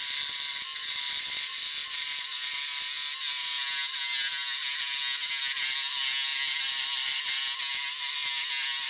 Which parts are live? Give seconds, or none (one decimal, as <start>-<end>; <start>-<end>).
0.0-8.9